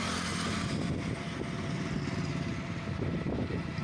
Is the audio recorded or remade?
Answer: recorded